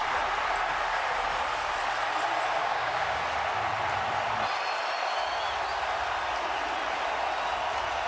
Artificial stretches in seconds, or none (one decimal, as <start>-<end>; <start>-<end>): 2.6-3.2